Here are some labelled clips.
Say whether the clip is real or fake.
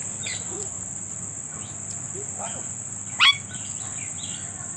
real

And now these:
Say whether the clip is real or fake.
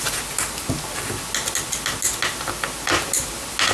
real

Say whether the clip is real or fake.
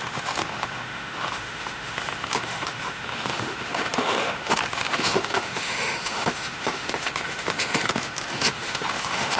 fake